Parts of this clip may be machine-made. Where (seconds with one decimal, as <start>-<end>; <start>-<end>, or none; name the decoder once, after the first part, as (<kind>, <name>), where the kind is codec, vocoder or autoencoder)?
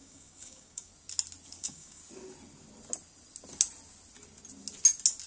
0.0-0.9 (codec, DAC); 1.6-2.0